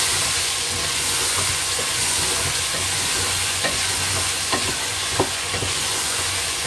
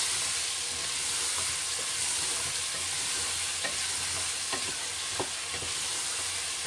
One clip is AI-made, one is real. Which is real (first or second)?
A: second